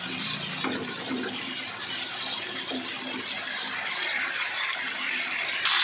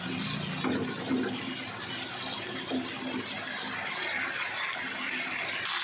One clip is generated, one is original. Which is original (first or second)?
second